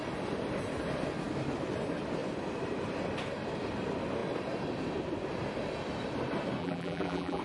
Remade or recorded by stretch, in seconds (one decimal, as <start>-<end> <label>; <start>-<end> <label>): 0.0-6.6 recorded; 6.6-7.4 remade